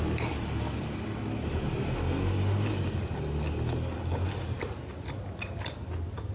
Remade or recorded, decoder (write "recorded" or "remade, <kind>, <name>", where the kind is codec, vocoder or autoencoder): recorded